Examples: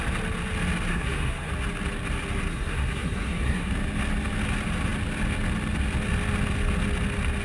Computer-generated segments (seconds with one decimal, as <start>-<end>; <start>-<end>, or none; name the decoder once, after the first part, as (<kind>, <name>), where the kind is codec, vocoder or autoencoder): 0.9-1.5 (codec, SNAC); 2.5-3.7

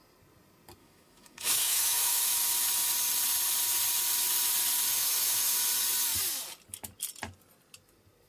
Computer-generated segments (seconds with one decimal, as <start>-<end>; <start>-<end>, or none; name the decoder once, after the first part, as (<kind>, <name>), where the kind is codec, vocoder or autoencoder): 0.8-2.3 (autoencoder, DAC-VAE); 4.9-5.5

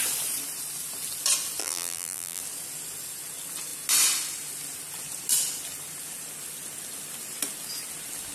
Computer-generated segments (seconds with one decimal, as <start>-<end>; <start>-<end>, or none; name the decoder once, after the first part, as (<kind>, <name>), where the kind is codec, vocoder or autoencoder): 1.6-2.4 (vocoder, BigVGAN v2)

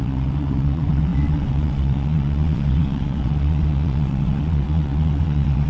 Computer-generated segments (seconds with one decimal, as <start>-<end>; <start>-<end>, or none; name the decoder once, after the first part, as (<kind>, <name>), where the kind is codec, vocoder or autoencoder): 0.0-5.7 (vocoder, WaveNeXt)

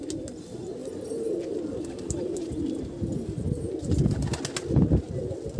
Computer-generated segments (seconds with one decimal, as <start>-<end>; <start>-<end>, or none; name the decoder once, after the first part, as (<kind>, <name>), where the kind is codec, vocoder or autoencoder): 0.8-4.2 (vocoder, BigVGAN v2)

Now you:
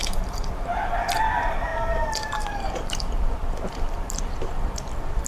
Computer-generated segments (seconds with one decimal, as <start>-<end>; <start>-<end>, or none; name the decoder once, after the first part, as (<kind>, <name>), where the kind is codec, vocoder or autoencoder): 0.0-5.3 (vocoder, BigVGAN v2)

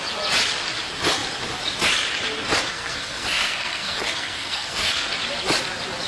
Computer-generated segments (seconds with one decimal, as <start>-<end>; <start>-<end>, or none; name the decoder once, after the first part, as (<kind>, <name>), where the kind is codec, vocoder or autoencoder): 2.7-5.1 (codec, SNAC)